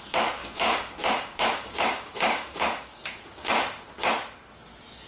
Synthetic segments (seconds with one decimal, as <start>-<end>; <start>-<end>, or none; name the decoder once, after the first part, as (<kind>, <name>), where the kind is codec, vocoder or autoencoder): 0.4-3.5 (codec, DAC)